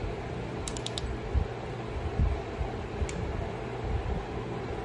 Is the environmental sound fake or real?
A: real